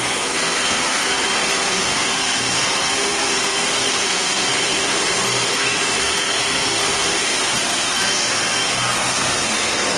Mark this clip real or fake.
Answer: fake